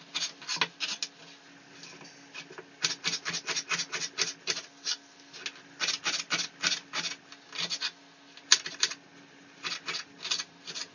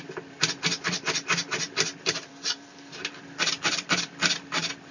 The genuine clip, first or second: first